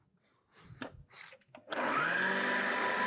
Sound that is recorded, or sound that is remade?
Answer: recorded